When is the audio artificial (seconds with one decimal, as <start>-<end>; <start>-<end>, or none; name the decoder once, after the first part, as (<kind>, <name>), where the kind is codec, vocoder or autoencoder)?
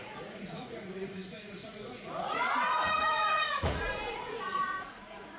0.0-5.4 (vocoder, Vocos)